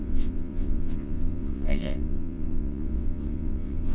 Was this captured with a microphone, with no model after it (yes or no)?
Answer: no